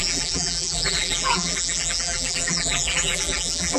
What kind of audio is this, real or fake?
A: fake